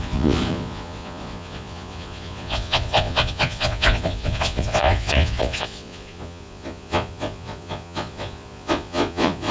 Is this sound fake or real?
fake